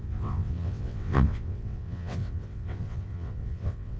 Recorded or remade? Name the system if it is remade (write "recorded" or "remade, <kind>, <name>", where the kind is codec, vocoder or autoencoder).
remade, vocoder, WaveNeXt